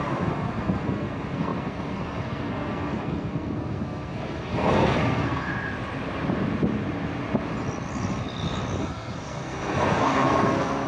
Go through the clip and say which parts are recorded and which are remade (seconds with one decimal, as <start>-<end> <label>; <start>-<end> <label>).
0.0-5.5 remade; 5.5-8.8 recorded; 8.8-10.9 remade